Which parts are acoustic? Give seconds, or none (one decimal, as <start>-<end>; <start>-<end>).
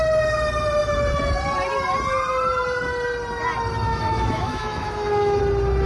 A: 0.0-3.9; 5.4-5.9